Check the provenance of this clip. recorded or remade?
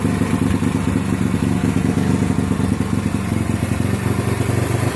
recorded